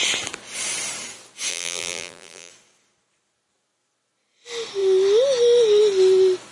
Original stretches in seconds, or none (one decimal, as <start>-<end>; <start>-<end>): 0.0-1.5; 2.5-6.5